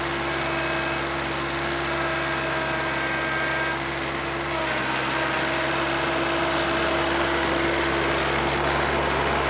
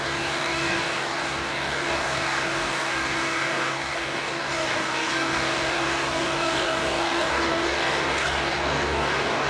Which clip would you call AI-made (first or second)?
second